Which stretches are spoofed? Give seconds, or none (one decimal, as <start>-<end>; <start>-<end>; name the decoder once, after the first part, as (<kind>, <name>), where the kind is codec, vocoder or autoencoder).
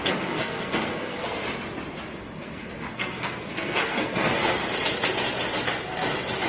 0.0-1.4 (codec, SNAC); 2.2-4.6